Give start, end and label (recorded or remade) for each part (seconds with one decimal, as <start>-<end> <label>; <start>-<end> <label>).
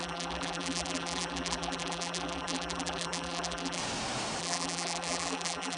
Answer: 0.0-3.8 remade; 3.8-4.4 recorded; 4.4-5.8 remade